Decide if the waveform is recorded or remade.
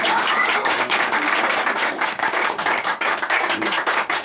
remade